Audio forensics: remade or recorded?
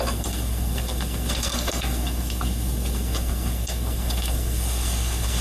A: remade